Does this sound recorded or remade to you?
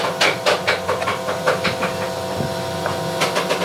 recorded